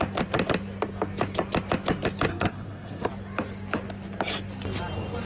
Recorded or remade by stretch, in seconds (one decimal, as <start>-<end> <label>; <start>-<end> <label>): 0.0-2.3 recorded; 2.3-3.1 remade; 3.1-5.3 recorded